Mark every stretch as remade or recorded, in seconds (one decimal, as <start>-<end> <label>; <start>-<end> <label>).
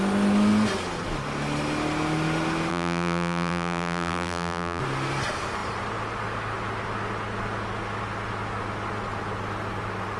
0.0-2.7 recorded; 2.7-4.8 remade; 4.8-10.2 recorded